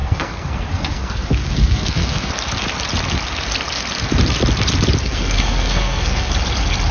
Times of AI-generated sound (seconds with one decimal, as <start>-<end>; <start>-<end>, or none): 0.0-2.3; 5.0-6.3